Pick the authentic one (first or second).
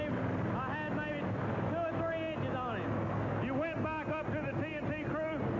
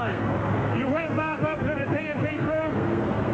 first